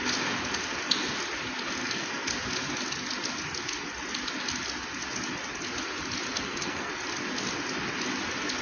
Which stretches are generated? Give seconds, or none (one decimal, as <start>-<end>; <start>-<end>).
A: 1.8-2.3; 6.3-6.9